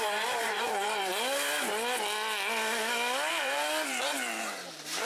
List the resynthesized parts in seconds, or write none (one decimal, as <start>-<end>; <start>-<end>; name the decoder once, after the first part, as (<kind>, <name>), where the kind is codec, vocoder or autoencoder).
0.0-1.1 (vocoder, BigVGAN v2); 3.3-5.1